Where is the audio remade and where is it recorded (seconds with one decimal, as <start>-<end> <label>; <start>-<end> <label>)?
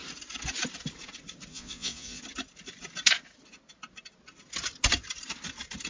0.0-1.5 recorded; 1.5-2.2 remade; 2.2-5.9 recorded